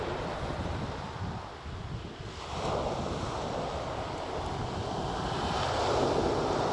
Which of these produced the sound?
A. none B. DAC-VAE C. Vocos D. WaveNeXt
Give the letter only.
A